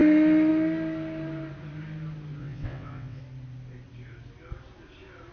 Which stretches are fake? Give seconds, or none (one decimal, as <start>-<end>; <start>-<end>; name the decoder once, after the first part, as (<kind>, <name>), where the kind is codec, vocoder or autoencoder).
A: 2.4-3.2 (vocoder, WaveNeXt)